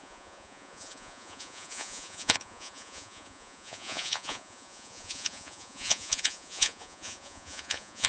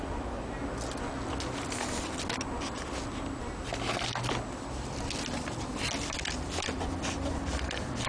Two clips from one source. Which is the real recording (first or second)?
second